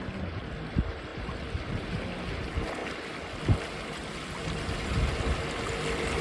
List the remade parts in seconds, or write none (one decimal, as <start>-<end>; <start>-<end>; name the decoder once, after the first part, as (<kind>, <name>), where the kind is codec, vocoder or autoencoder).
1.1-1.8 (vocoder, BigVGAN v2); 2.8-3.4; 4.4-5.1